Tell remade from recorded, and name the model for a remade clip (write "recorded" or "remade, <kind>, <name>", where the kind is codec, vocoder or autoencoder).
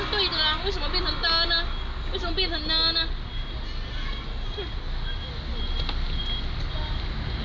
recorded